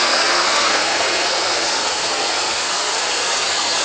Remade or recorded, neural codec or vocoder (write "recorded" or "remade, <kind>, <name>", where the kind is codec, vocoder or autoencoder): remade, codec, SNAC